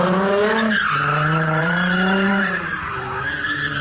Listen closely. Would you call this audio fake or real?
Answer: fake